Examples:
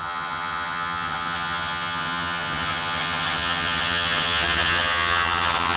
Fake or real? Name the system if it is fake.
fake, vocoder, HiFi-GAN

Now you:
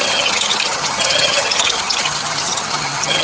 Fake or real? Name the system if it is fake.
fake, vocoder, HiFi-GAN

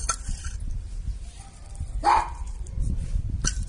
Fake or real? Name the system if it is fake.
fake, vocoder, BigVGAN v2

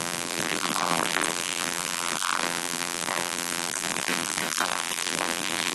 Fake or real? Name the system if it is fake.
fake, vocoder, BigVGAN v2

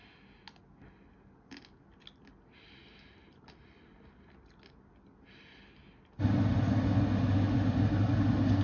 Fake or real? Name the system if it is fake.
real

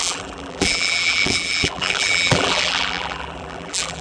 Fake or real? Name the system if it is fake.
fake, vocoder, BigVGAN v2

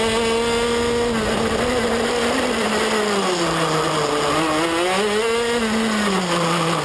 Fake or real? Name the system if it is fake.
real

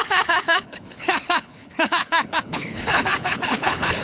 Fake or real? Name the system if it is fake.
fake, codec, HILCodec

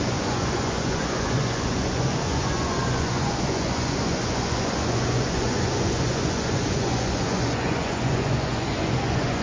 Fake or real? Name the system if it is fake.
fake, vocoder, Vocos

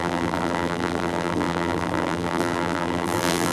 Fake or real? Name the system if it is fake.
fake, vocoder, BigVGAN v2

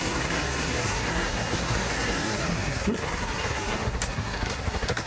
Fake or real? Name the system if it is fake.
fake, codec, SNAC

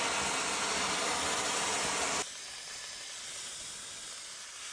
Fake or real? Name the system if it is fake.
real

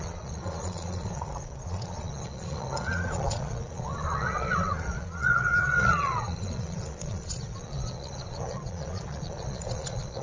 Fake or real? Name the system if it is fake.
fake, vocoder, Vocos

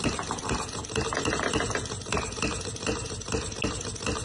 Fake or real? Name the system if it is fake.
fake, vocoder, BigVGAN v2